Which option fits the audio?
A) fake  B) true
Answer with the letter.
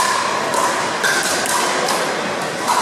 B